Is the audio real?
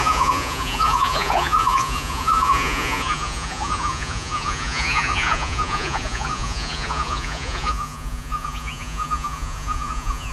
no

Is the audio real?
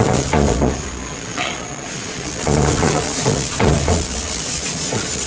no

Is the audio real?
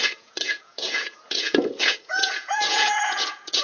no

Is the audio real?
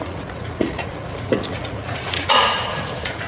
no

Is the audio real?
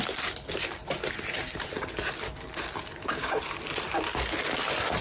yes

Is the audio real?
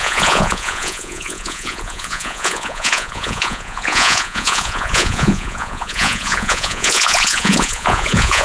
no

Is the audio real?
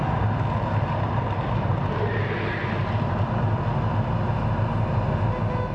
yes